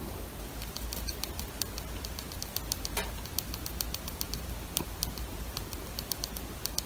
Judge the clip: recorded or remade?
recorded